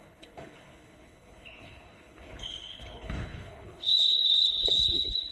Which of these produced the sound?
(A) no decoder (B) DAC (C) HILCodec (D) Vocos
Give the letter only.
C